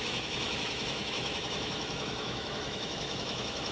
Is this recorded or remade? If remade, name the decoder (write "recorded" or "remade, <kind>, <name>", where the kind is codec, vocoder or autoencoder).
remade, autoencoder, DAC-VAE